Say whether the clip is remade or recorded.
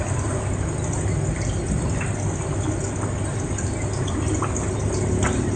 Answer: recorded